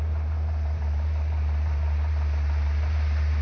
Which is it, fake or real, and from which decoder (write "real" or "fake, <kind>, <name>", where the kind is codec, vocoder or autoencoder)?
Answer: fake, vocoder, BigVGAN v2